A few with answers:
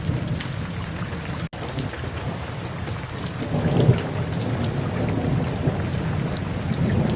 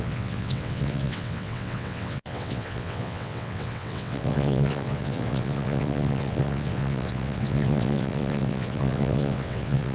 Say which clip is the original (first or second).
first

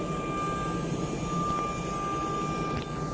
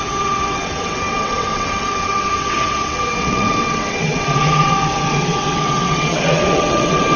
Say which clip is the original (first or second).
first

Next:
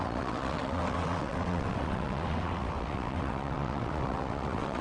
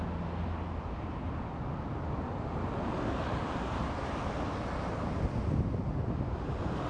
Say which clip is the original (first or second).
second